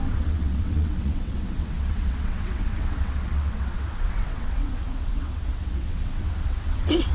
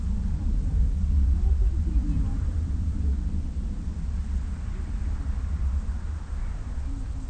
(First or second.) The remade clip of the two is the first